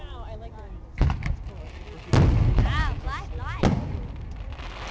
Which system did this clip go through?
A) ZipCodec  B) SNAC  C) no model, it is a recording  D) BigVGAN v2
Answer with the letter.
C